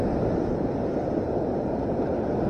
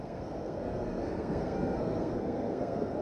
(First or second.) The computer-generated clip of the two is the second